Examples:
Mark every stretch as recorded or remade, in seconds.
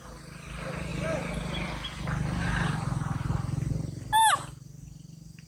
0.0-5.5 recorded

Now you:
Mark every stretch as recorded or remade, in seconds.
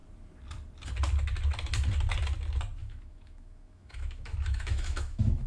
0.0-2.8 recorded; 2.8-5.5 remade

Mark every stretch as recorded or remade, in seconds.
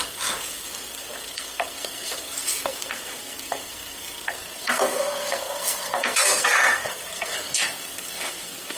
0.0-8.8 remade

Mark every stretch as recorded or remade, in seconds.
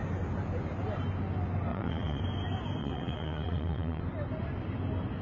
0.0-1.7 recorded; 1.7-2.2 remade; 2.2-2.8 recorded; 2.8-4.0 remade; 4.0-5.2 recorded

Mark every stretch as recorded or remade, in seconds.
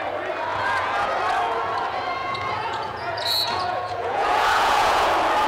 0.0-0.5 recorded; 0.5-1.1 remade; 1.1-2.2 recorded; 2.2-5.1 remade; 5.1-5.5 recorded